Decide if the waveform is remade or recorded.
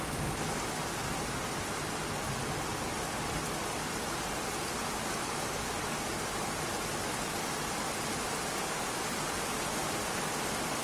recorded